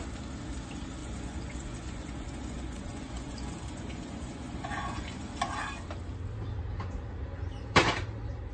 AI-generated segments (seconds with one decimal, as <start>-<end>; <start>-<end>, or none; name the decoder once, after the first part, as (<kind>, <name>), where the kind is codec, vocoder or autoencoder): 1.0-5.2 (vocoder, Vocos)